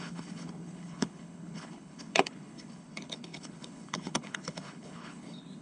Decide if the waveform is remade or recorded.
remade